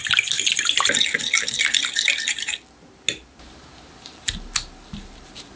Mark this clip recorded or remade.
recorded